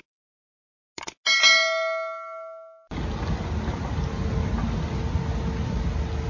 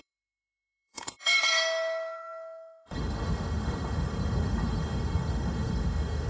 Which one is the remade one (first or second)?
second